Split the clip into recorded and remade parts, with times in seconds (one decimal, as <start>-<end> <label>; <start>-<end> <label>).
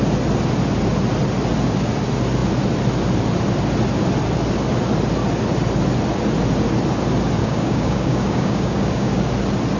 0.0-7.4 recorded; 7.4-9.1 remade; 9.1-9.8 recorded